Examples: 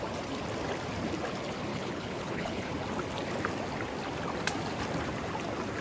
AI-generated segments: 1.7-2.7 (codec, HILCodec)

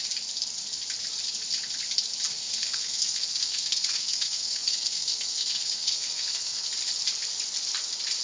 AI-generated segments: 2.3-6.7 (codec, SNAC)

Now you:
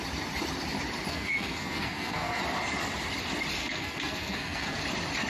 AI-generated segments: 1.1-2.4 (codec, SNAC); 3.6-4.8

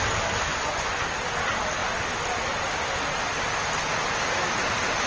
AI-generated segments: 0.5-1.0 (vocoder, Vocos)

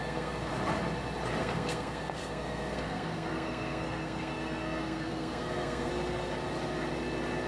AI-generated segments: 0.0-0.5 (codec, SNAC); 1.4-5.9